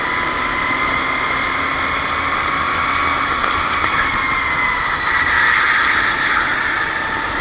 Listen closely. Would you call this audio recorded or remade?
recorded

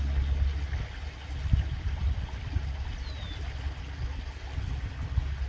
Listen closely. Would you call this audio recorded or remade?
recorded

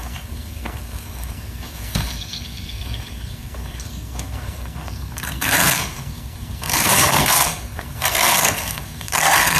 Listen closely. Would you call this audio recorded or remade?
remade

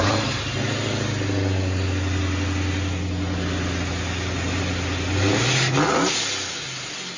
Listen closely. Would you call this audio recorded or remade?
recorded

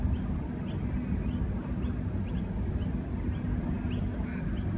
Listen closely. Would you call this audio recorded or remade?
recorded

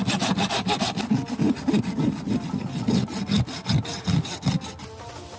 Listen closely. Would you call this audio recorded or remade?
recorded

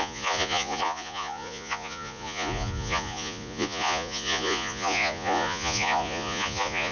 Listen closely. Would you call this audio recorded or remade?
remade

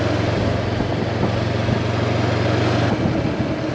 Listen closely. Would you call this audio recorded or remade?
recorded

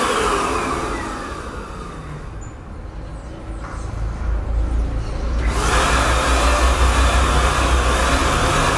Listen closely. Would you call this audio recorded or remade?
recorded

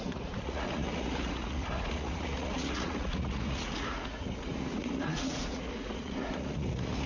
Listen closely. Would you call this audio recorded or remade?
remade